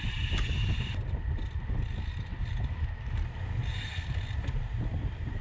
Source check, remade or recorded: recorded